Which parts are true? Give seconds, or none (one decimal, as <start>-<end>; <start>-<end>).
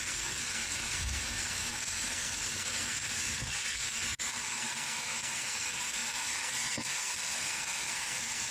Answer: none